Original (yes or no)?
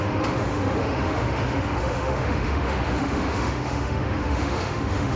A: no